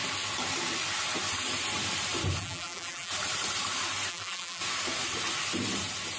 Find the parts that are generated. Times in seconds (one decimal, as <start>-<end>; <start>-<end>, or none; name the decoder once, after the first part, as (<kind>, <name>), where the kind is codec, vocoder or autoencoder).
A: 2.4-3.1 (vocoder, BigVGAN v2); 4.1-4.6